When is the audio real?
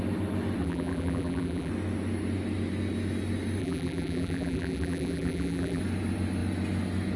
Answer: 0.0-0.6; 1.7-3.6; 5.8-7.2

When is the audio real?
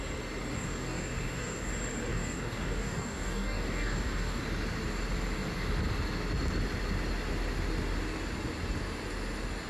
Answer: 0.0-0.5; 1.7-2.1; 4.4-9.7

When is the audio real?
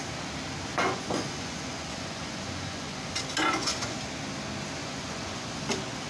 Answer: 0.0-0.7; 3.0-3.4; 4.0-4.8; 5.6-6.1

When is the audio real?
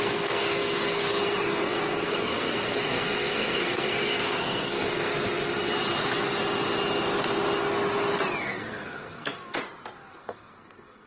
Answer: 5.1-8.4; 9.6-10.1